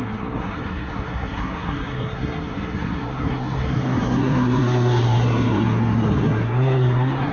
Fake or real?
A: fake